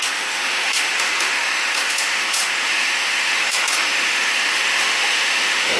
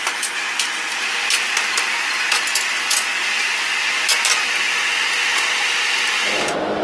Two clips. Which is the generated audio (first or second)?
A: first